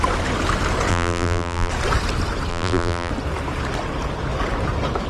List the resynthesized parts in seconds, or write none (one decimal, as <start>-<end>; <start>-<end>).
0.9-1.7; 2.5-3.1